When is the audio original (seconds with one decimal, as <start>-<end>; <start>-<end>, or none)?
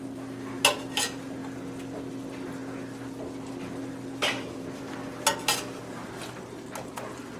0.0-4.2; 4.8-7.4